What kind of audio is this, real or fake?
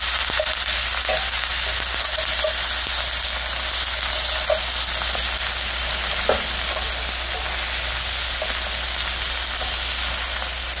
real